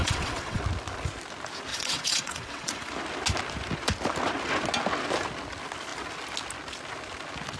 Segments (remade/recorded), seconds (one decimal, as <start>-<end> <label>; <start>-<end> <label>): 0.0-0.6 remade; 0.6-1.7 recorded; 1.7-2.9 remade; 2.9-7.6 recorded